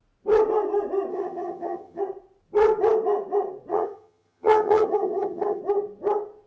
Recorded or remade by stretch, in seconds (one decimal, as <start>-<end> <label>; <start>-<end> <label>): 0.0-1.1 recorded; 1.1-2.0 remade; 2.0-3.7 recorded; 3.7-5.6 remade; 5.6-6.5 recorded